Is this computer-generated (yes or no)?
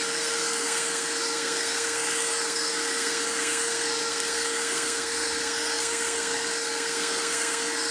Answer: yes